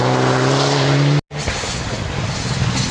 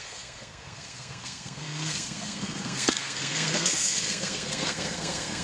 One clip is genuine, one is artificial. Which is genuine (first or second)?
first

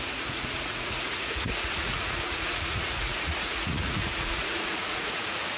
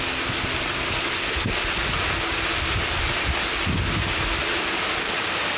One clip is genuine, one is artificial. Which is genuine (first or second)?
second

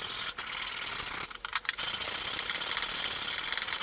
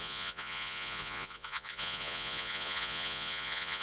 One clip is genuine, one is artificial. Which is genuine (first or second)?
first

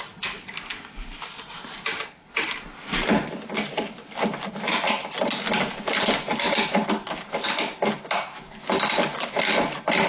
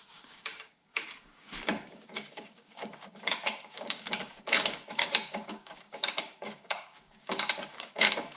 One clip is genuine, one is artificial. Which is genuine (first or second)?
first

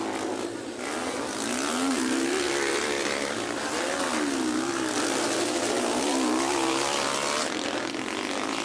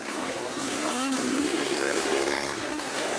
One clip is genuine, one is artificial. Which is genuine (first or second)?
first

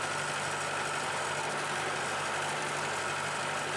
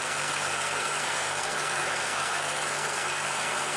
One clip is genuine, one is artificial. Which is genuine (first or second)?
first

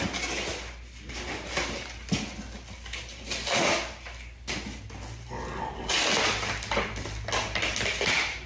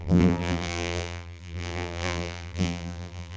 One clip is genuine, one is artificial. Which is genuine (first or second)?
first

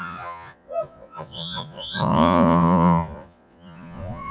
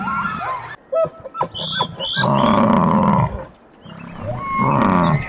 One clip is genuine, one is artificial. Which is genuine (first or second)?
second